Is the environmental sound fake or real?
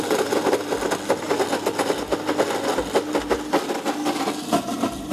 real